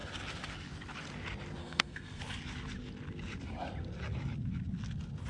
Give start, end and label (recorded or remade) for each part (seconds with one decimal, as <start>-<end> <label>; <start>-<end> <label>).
0.0-1.6 recorded; 1.6-2.2 remade; 2.2-5.3 recorded